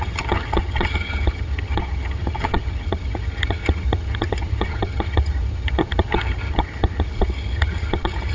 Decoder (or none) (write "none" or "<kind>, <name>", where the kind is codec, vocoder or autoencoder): vocoder, HiFi-GAN